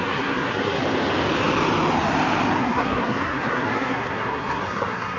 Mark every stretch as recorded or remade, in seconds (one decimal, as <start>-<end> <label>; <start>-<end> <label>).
0.0-0.8 remade; 0.8-2.6 recorded; 2.6-5.2 remade